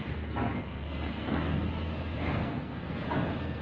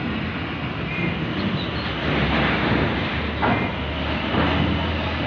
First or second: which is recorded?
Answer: second